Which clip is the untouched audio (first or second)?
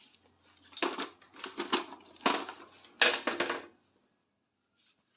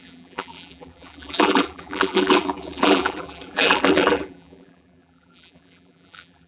first